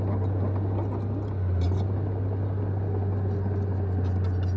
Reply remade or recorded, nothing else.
recorded